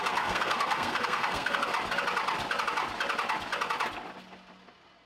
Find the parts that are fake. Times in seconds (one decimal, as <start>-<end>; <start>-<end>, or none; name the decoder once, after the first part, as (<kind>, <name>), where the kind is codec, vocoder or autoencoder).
0.0-1.7 (codec, SNAC)